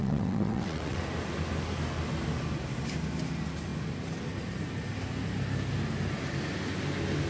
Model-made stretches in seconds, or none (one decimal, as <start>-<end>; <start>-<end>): 0.0-1.0